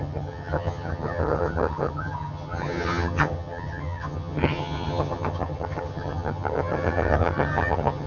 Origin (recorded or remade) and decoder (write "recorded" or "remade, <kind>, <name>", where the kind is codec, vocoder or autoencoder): remade, vocoder, HiFi-GAN